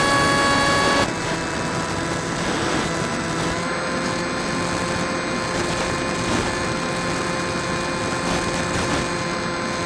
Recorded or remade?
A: recorded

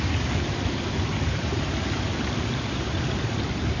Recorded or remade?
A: remade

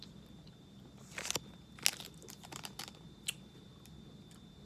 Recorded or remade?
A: recorded